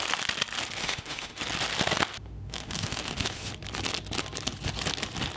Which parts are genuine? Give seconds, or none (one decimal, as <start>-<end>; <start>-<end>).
0.0-0.8; 1.4-2.2; 3.5-5.4